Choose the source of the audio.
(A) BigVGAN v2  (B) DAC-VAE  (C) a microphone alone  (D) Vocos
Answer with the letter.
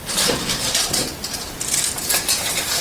C